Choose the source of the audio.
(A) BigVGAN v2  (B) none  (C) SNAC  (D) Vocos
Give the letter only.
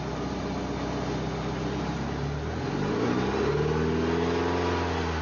B